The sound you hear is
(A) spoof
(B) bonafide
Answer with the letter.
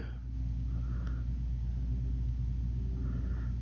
B